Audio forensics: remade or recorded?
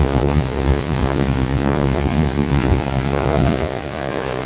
remade